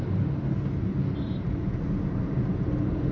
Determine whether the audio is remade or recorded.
recorded